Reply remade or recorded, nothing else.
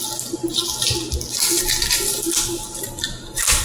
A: recorded